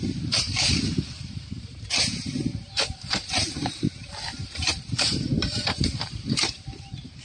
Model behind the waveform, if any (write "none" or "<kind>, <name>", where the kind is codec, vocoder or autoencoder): vocoder, BigVGAN v2